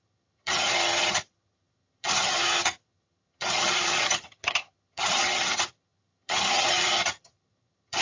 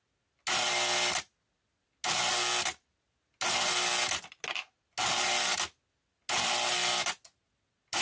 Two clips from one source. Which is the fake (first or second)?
first